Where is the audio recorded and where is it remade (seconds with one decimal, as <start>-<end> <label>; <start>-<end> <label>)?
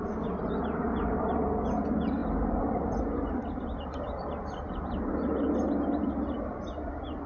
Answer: 0.0-7.3 recorded